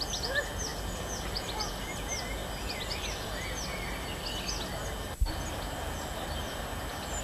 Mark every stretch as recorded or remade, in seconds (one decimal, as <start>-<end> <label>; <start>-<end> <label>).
0.0-7.2 recorded